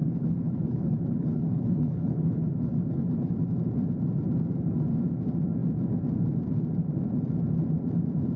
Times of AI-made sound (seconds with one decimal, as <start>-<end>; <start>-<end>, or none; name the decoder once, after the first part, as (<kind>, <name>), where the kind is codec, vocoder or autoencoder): 0.0-3.3 (codec, HILCodec)